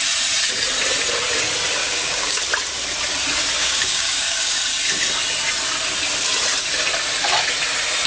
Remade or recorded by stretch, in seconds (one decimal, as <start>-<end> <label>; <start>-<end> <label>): 0.0-1.8 recorded; 1.8-2.4 remade; 2.4-3.6 recorded; 3.6-4.6 remade; 4.6-8.1 recorded

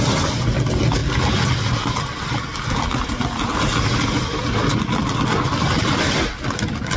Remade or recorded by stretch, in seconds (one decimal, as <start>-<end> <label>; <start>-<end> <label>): 0.0-7.0 recorded

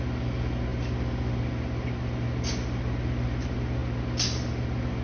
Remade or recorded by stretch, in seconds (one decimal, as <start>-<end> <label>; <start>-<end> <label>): 0.0-5.0 recorded